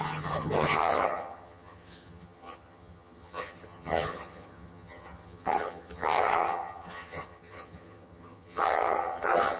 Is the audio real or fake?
fake